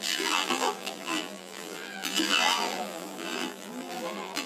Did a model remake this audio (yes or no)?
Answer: yes